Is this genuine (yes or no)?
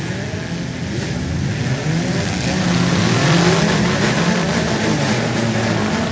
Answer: yes